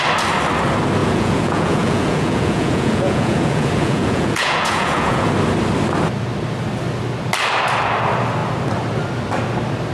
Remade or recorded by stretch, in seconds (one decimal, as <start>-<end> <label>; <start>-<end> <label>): 0.0-1.0 recorded; 1.0-5.3 remade; 5.3-9.9 recorded